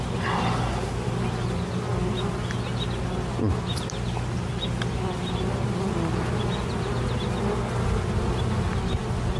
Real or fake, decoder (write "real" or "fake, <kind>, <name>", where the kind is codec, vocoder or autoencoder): real